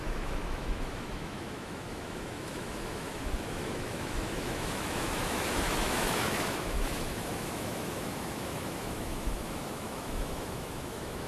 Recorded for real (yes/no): no